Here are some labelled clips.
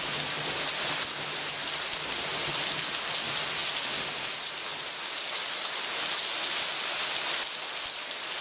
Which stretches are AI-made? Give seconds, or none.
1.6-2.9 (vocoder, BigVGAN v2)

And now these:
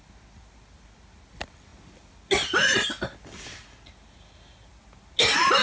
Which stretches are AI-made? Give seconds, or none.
none

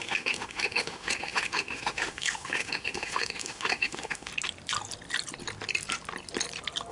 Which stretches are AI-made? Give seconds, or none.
0.0-4.3 (autoencoder, DAC-VAE)

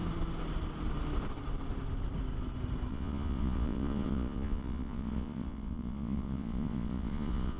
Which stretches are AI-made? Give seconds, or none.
2.9-7.6 (vocoder, Vocos)

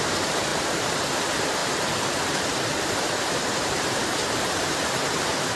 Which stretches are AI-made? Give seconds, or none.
0.5-1.2 (vocoder, BigVGAN v2); 1.6-5.0

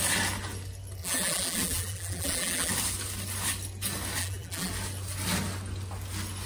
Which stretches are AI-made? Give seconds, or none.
1.0-2.7 (vocoder, BigVGAN v2); 4.2-4.7

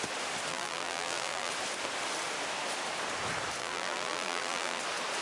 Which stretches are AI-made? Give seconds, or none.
0.5-1.5 (vocoder, BigVGAN v2); 3.6-4.8

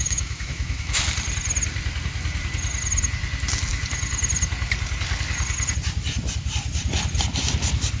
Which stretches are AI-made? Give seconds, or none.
0.0-1.0 (autoencoder, DAC-VAE)